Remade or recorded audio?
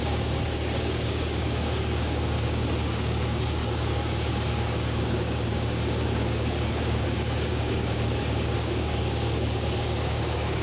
remade